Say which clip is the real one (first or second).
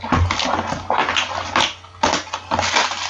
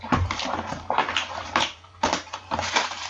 first